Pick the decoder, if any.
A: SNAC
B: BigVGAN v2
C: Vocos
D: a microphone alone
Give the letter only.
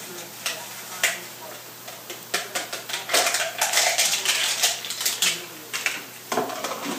B